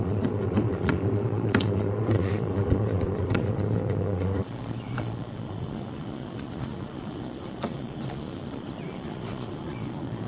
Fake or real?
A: fake